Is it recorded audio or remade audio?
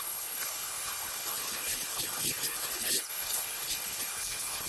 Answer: remade